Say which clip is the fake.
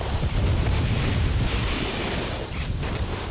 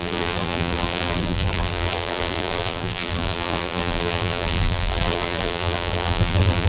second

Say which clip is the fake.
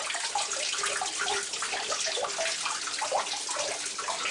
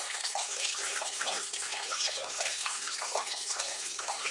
second